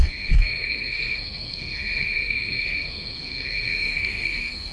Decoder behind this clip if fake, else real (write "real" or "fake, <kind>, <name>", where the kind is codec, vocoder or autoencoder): fake, codec, SNAC